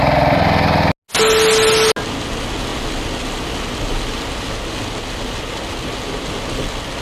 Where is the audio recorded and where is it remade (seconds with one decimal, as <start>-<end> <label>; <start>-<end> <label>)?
0.0-7.0 recorded